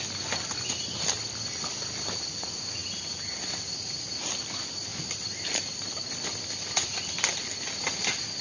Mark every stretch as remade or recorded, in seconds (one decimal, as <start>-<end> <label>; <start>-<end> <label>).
0.0-4.9 recorded; 4.9-5.9 remade; 5.9-8.4 recorded